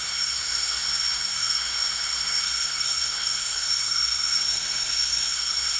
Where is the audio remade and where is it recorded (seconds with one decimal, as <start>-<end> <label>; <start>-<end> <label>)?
0.0-5.8 remade